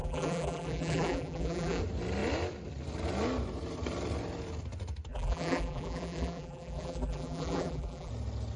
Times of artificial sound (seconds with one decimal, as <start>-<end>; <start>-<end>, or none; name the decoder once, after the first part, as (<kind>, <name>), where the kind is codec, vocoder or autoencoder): 0.0-1.8 (vocoder, BigVGAN v2); 5.1-8.1